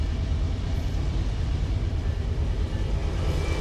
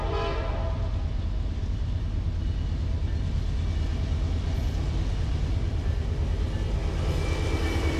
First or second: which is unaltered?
second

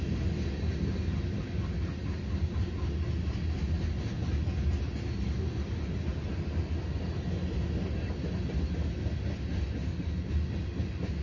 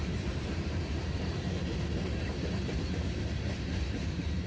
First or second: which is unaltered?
first